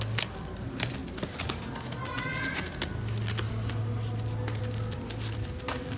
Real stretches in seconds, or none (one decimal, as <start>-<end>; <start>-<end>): 0.0-6.0